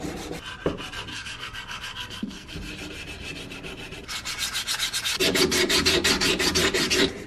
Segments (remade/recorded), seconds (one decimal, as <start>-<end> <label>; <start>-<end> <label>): 0.0-1.1 recorded; 1.1-2.5 remade; 2.5-7.3 recorded